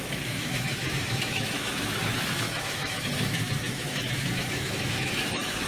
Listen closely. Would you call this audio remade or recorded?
remade